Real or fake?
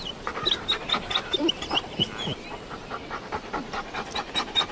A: real